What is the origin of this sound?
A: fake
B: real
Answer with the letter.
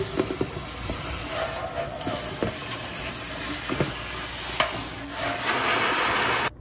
B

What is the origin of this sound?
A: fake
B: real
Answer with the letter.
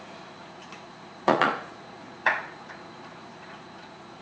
A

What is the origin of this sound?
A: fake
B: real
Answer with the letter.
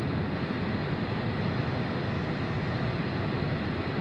B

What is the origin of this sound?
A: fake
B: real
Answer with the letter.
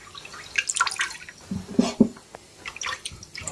B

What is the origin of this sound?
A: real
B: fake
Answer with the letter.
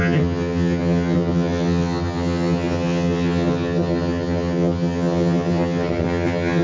B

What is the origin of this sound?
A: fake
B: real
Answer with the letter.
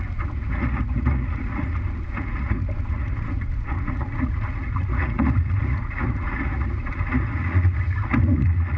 A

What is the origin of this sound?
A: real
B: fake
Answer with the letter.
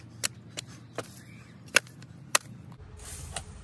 A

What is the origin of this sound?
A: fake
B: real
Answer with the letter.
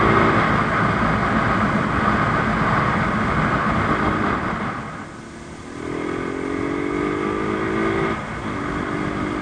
B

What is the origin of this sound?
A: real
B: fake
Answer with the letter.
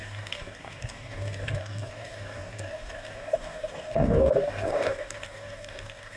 B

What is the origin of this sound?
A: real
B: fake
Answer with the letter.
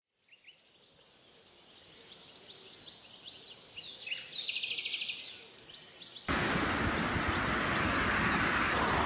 A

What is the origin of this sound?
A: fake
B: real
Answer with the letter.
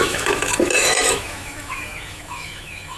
A